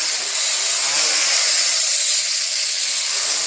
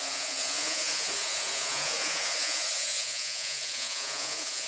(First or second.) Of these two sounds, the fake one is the second